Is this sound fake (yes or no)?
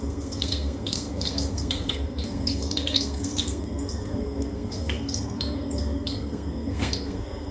yes